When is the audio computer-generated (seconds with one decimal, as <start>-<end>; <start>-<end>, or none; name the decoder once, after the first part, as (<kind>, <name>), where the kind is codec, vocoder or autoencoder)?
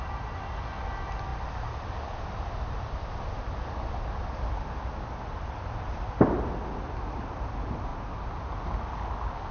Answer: none